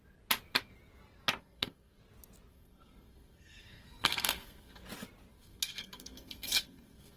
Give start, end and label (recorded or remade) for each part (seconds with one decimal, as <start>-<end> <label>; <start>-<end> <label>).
0.0-1.4 recorded; 1.4-2.0 remade; 2.0-2.5 recorded; 2.5-4.8 remade; 4.8-5.3 recorded; 5.3-7.2 remade